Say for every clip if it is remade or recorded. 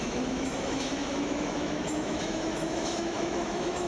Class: remade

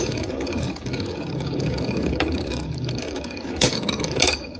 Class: remade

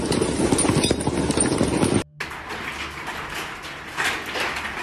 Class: recorded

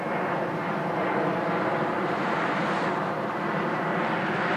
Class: recorded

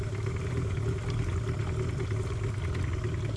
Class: recorded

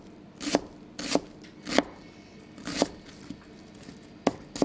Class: recorded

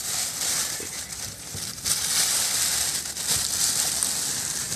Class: recorded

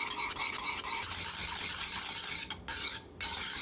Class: recorded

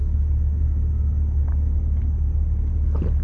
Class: recorded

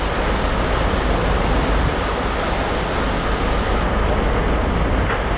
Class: recorded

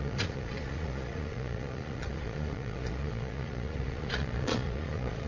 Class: remade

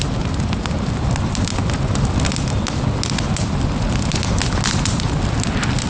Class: recorded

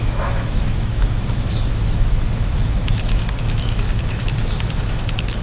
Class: remade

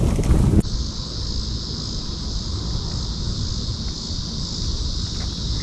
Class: recorded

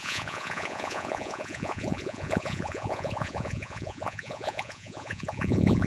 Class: remade